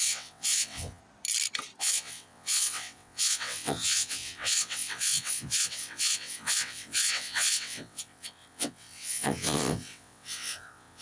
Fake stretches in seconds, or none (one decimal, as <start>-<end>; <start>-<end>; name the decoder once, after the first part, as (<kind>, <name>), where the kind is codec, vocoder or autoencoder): 0.0-1.0 (vocoder, WaveNeXt); 1.8-11.0